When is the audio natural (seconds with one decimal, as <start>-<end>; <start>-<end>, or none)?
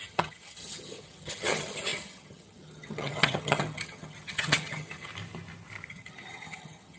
5.1-5.9